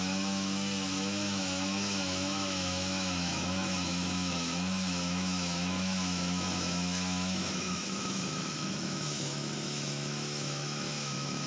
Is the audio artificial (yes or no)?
yes